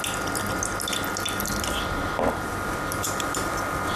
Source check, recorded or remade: recorded